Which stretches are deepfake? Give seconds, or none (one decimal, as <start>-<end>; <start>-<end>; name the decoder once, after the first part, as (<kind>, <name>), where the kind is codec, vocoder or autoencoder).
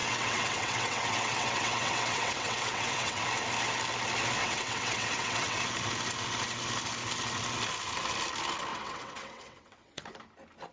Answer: 0.0-3.2 (vocoder, WaveNeXt); 4.4-5.6; 8.7-10.0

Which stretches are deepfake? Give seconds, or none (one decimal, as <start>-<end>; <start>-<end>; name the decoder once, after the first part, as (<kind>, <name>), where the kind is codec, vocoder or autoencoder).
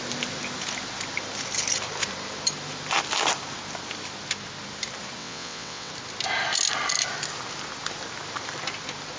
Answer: 5.2-5.9 (vocoder, WaveNeXt)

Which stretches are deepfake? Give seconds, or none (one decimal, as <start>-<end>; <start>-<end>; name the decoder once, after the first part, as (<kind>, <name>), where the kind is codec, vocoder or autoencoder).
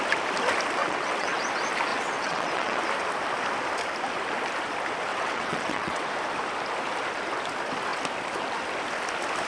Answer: 0.8-1.4 (vocoder, WaveNeXt); 1.9-2.8; 5.1-6.1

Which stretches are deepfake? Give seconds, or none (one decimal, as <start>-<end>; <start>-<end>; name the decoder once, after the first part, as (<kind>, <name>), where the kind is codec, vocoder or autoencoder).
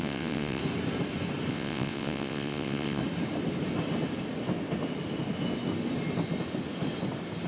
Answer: 0.0-0.6 (vocoder, WaveNeXt); 1.5-3.0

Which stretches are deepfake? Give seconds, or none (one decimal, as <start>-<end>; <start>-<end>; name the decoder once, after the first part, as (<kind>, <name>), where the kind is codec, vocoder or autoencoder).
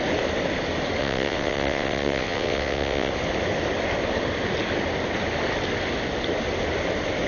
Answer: 1.0-3.1 (vocoder, WaveNeXt)